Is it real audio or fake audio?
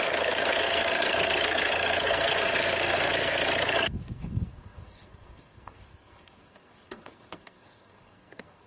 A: fake